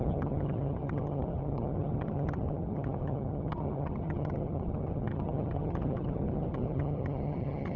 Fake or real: fake